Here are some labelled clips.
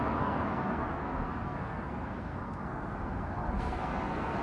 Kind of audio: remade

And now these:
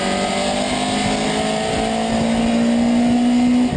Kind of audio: recorded